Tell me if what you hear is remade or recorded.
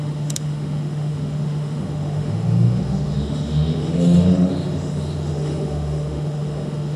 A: remade